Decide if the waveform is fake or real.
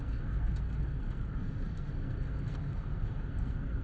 fake